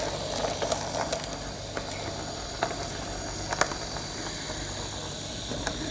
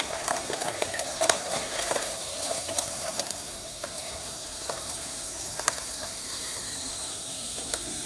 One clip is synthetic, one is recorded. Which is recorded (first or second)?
first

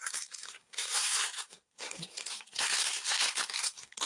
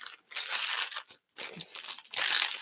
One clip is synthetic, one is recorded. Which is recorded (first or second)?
second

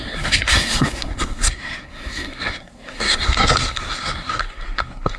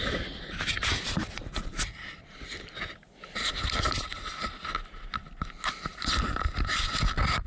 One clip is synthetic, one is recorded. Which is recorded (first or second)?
second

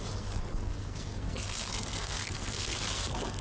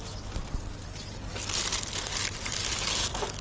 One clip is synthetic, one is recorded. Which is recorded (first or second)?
second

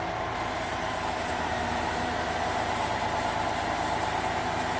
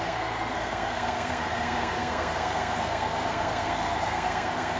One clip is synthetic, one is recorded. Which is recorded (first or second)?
first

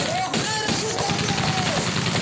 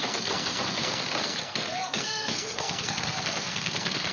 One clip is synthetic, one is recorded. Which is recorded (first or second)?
first